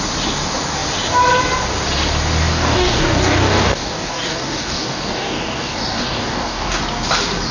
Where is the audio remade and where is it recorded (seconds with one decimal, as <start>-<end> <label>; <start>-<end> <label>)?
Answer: 0.0-2.5 recorded; 2.5-6.8 remade; 6.8-7.5 recorded